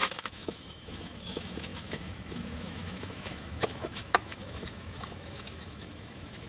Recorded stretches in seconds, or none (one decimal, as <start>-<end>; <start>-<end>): none